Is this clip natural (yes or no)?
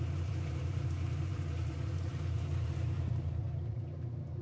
no